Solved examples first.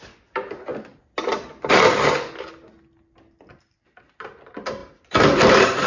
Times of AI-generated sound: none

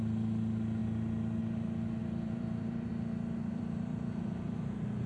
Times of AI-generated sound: 2.0-2.9 (vocoder, BigVGAN v2); 3.5-5.1

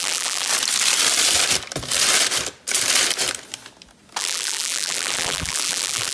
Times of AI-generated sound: 0.0-0.5 (vocoder, BigVGAN v2); 4.2-6.1

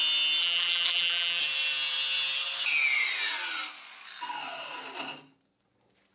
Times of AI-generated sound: 0.4-1.4 (vocoder, BigVGAN v2)